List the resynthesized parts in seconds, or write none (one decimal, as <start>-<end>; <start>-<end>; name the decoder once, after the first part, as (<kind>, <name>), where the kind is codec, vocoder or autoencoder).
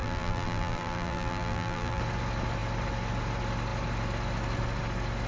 0.0-2.0 (vocoder, BigVGAN v2)